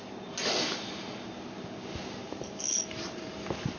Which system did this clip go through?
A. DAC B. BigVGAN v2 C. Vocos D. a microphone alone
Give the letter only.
D